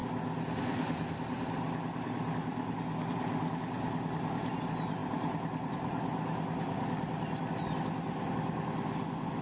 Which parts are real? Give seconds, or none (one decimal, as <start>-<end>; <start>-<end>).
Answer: 0.0-9.4